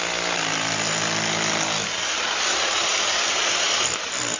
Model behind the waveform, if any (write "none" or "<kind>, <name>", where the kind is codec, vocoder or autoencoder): none